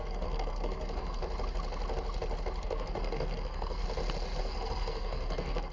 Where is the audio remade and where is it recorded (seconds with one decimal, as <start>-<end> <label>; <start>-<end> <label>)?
0.0-1.2 remade; 1.2-2.6 recorded; 2.6-3.8 remade; 3.8-4.4 recorded; 4.4-5.7 remade